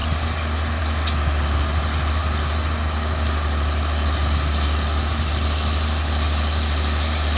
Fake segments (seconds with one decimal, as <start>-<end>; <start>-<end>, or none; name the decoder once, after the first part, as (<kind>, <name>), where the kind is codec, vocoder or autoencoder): none